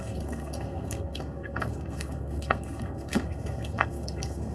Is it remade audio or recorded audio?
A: remade